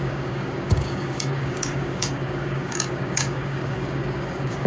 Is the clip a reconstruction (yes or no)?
yes